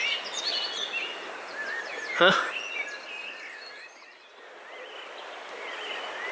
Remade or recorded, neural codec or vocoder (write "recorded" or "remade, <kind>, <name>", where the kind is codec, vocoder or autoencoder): recorded